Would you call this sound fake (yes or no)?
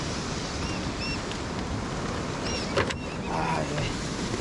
no